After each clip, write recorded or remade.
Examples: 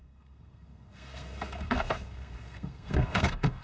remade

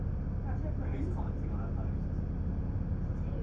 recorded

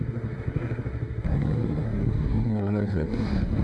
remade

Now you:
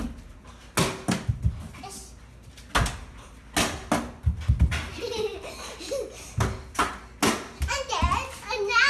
recorded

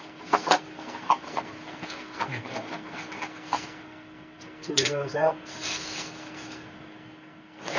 remade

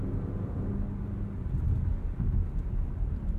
recorded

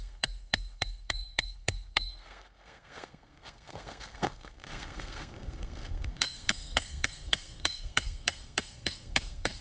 remade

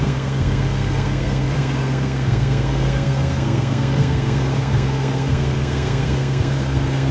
remade